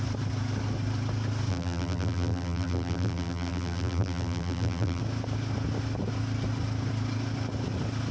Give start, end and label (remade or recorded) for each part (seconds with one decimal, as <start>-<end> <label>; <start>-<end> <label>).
0.0-1.5 recorded; 1.5-5.0 remade; 5.0-8.1 recorded